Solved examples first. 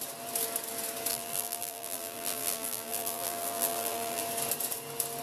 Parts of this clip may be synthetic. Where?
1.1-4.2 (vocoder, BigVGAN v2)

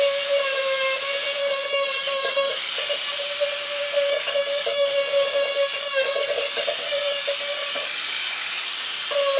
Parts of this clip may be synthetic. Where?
1.4-2.9 (codec, DAC); 4.1-8.7

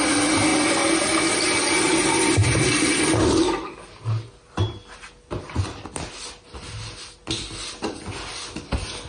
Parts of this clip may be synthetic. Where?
2.4-3.2 (vocoder, BigVGAN v2)

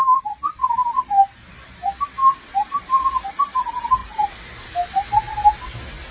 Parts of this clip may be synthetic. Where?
0.0-1.5 (vocoder, BigVGAN v2); 2.2-3.3; 4.0-5.2

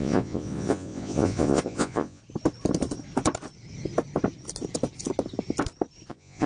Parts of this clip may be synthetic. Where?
0.0-2.2 (vocoder, Vocos); 6.1-6.5

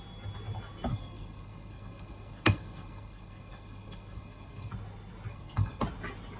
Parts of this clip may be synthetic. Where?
0.9-4.7 (codec, SNAC); 5.3-5.8

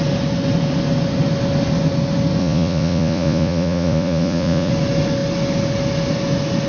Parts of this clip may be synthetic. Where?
2.4-4.7 (vocoder, Vocos)